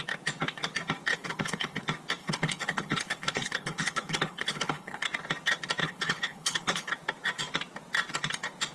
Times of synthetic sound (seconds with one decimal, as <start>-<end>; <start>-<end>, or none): 1.1-1.8; 2.2-5.0; 5.8-6.9